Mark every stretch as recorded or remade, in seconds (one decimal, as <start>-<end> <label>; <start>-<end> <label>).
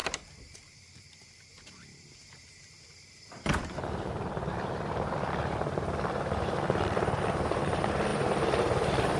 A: 0.0-9.2 remade